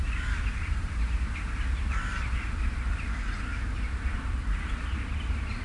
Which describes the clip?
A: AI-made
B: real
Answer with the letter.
B